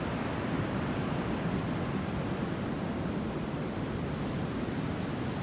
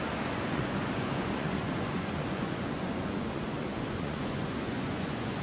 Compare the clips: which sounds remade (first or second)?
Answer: second